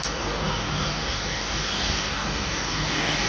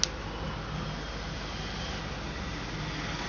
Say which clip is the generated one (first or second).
first